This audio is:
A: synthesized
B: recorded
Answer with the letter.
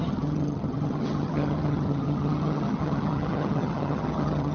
A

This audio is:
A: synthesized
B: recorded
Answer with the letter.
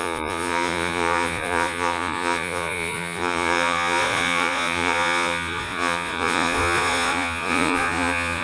A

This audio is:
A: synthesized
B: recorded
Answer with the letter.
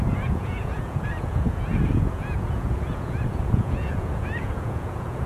A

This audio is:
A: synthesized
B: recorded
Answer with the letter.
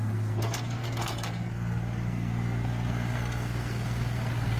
A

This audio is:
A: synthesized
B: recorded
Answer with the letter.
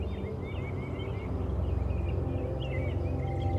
B